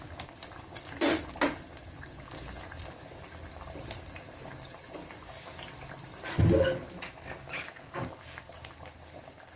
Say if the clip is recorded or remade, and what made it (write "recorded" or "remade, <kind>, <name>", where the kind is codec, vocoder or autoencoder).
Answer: recorded